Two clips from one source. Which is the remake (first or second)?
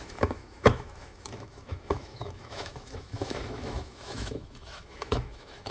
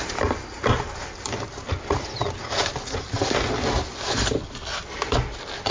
first